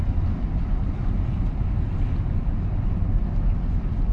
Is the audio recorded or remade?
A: recorded